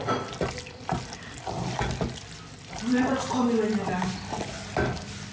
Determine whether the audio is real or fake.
real